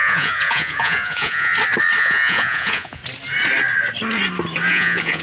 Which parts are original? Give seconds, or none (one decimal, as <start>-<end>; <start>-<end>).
1.5-2.0; 3.0-4.7

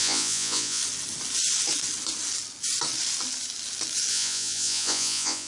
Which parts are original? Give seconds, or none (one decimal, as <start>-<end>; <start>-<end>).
0.8-4.1